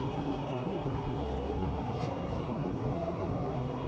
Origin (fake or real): fake